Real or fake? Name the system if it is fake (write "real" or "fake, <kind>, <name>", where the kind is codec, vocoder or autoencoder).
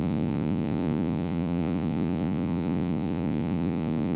fake, vocoder, Vocos